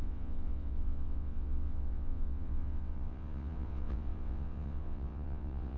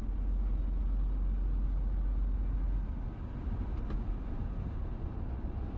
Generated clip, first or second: first